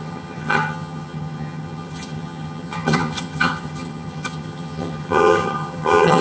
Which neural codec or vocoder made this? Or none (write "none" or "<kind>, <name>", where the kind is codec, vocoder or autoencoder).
vocoder, HiFi-GAN